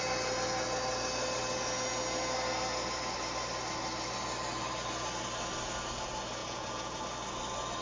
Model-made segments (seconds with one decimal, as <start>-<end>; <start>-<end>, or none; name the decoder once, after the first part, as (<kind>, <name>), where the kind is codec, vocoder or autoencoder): 6.4-7.0 (vocoder, Vocos)